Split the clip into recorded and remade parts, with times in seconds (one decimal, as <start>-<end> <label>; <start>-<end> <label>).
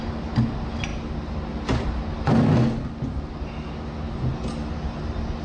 0.0-5.4 recorded